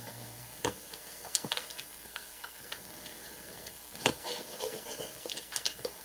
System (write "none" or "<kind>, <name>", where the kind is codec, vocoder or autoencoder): codec, SNAC